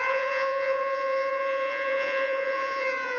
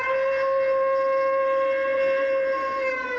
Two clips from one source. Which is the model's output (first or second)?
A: first